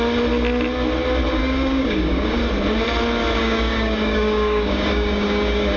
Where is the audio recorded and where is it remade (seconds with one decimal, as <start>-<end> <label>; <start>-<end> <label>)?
0.0-1.4 recorded; 1.4-2.4 remade; 2.4-3.4 recorded; 3.4-5.8 remade